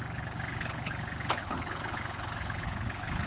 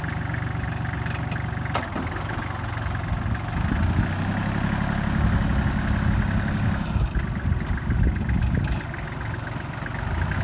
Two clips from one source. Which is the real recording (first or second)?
second